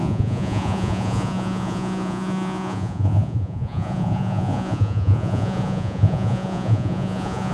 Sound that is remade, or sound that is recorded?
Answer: remade